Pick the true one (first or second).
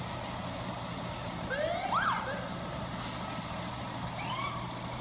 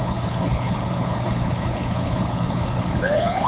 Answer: first